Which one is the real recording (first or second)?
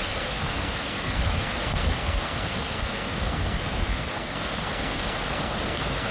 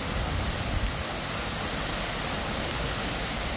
second